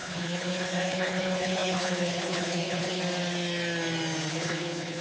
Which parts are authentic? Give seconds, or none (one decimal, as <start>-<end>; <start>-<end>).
3.0-4.3